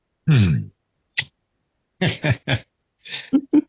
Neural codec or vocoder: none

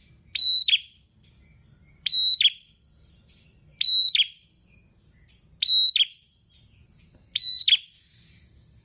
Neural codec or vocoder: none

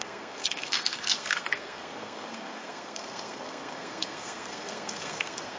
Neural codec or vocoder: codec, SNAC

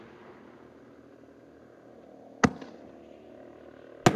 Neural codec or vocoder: none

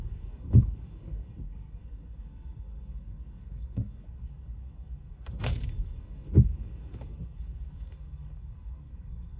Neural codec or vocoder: codec, SNAC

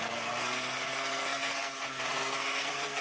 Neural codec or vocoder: codec, SNAC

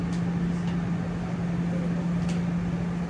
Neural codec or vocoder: none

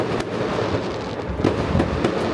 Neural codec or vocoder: none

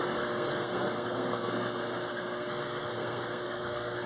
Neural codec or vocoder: codec, SNAC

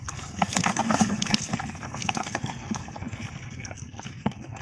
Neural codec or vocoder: codec, SNAC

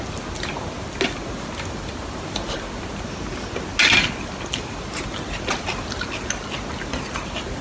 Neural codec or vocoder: none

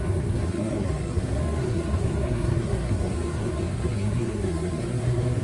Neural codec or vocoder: codec, SNAC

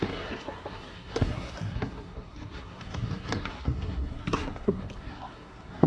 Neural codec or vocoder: codec, SNAC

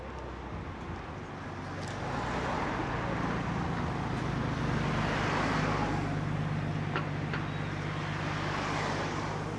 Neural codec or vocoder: none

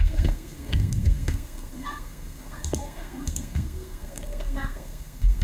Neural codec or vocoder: codec, SNAC